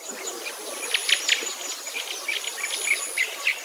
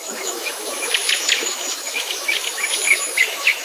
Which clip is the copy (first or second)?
second